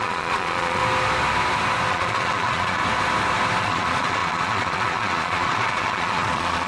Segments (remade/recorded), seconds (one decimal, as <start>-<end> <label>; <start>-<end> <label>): 0.0-0.8 remade; 0.8-1.9 recorded; 1.9-2.8 remade; 2.8-3.6 recorded; 3.6-6.7 remade